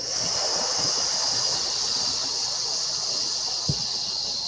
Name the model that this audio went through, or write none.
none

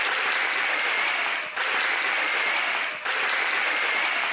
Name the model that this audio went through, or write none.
none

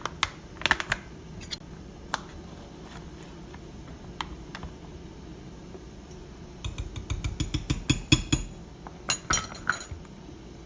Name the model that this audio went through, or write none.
none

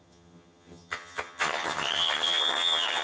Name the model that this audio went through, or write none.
vocoder, HiFi-GAN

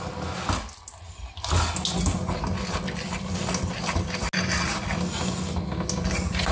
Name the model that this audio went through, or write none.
none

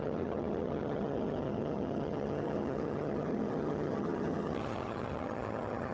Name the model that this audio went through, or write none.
vocoder, HiFi-GAN